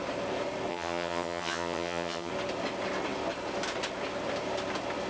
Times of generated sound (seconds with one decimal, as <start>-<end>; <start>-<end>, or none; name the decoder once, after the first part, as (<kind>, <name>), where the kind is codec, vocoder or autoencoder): 0.7-2.3 (vocoder, HiFi-GAN)